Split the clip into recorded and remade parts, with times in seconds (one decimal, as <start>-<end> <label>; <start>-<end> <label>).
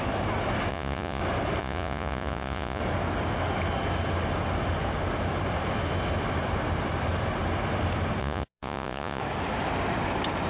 0.0-0.7 recorded; 0.7-1.2 remade; 1.2-1.6 recorded; 1.6-2.8 remade; 2.8-8.2 recorded; 8.2-9.2 remade; 9.2-10.5 recorded